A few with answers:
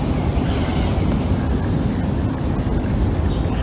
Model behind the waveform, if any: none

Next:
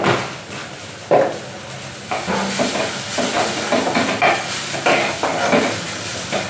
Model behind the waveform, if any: none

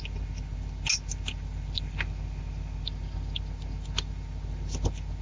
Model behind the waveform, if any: none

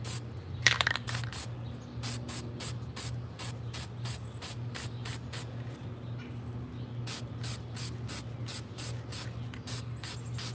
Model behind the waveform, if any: none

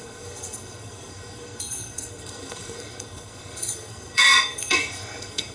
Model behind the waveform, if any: codec, SNAC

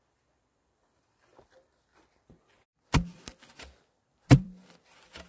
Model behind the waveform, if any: vocoder, BigVGAN v2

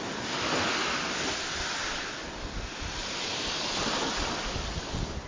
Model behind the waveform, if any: none